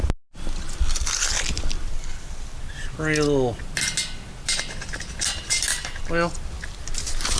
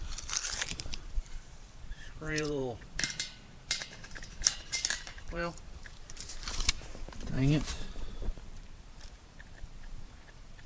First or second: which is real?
first